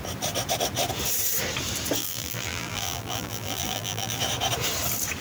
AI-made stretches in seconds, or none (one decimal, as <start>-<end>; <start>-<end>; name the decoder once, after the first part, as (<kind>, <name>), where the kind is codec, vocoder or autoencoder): 2.0-4.2 (vocoder, BigVGAN v2)